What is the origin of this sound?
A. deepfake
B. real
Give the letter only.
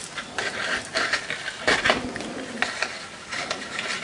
B